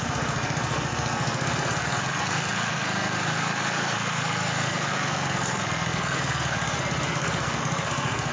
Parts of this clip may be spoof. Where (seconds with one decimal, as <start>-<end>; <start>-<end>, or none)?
0.0-8.3